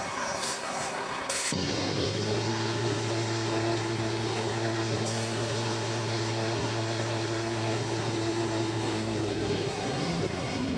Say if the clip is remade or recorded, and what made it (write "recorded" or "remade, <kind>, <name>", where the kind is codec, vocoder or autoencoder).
remade, codec, SNAC